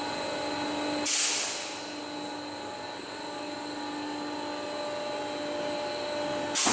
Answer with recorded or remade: recorded